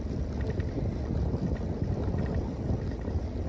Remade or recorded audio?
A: recorded